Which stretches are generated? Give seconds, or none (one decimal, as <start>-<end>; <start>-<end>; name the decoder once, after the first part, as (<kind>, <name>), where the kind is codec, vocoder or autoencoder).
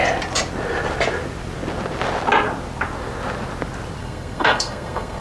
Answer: 4.0-5.2 (codec, SNAC)